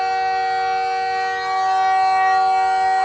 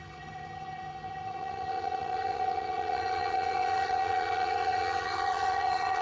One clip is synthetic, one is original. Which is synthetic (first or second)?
second